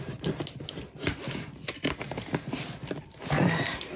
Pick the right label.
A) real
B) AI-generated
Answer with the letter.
A